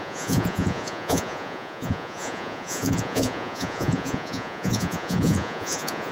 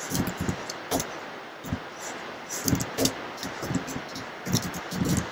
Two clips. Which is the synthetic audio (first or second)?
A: first